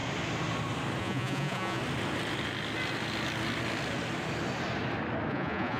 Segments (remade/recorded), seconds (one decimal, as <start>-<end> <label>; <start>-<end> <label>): 0.0-1.0 recorded; 1.0-1.8 remade; 1.8-5.3 recorded; 5.3-5.8 remade